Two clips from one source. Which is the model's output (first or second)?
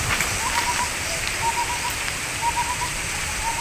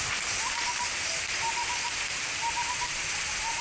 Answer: first